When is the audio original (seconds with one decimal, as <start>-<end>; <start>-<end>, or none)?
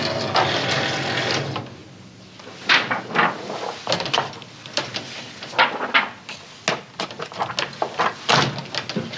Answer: 0.0-9.2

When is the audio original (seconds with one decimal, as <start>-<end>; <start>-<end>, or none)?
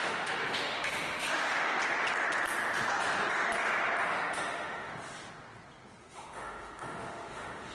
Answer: 1.8-4.0; 4.9-6.0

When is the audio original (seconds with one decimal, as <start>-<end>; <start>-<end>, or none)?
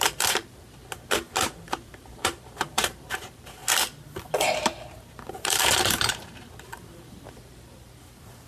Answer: 0.8-1.5; 3.6-5.3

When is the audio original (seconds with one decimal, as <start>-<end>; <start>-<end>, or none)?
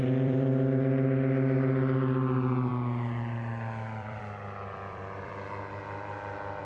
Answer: 5.3-6.6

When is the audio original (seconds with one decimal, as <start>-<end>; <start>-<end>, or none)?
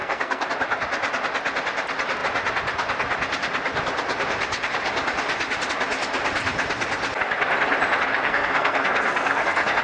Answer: 0.5-8.1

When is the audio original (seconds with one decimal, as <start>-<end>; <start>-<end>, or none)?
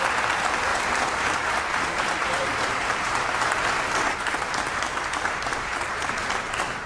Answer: 0.0-0.7; 4.5-4.9; 6.1-6.9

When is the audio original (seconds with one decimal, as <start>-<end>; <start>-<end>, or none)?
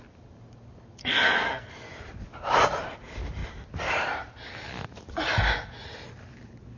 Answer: 0.0-1.0; 1.7-6.8